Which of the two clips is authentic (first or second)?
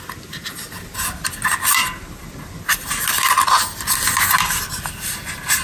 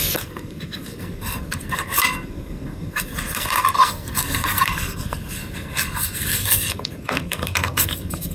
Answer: first